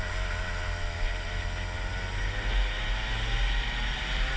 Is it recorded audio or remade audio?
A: recorded